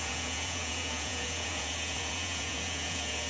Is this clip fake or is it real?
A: fake